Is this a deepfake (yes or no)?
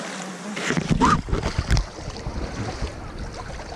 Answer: no